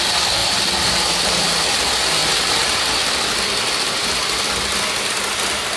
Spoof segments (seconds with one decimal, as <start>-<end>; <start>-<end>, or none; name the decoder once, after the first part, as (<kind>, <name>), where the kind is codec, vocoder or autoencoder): none